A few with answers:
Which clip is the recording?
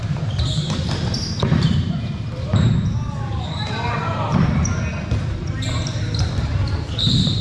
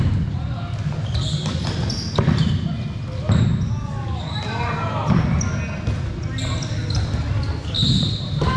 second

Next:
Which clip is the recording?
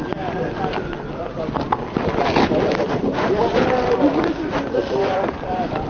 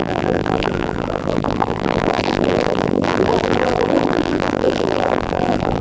first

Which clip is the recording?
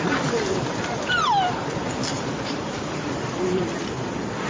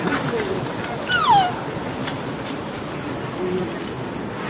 second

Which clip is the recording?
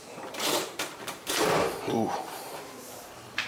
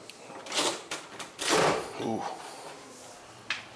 second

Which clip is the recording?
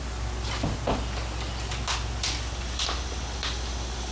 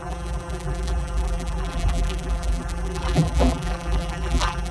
first